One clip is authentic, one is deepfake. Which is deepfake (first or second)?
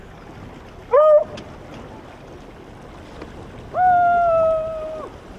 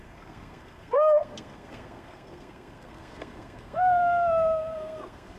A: second